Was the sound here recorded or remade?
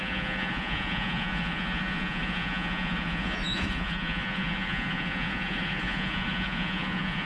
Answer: remade